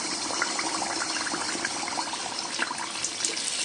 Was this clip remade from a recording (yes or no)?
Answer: no